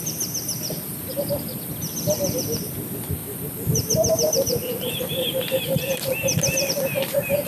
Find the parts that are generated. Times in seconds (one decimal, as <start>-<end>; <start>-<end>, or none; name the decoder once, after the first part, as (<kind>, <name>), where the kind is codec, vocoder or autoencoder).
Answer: 3.2-6.7 (vocoder, BigVGAN v2)